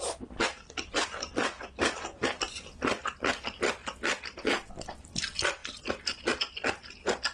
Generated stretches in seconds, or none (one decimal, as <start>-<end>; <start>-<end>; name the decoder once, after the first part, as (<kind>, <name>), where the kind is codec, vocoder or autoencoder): none